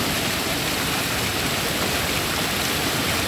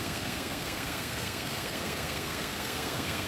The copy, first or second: second